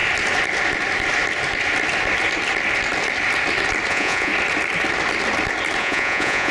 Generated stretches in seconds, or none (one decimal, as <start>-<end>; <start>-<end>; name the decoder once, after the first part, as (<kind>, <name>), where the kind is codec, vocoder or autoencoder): 3.9-4.3 (vocoder, Vocos); 5.8-6.5